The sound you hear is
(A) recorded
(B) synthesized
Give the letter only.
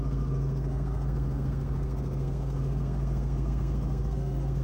B